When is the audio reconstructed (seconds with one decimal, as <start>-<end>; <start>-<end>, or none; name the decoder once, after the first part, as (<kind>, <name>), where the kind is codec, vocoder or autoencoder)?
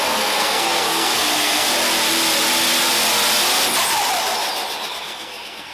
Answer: 0.0-1.7 (codec, SNAC); 4.9-5.7